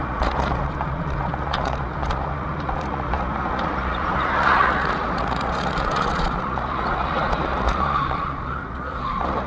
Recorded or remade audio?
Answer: remade